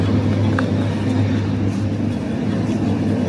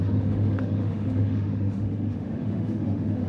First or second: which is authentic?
first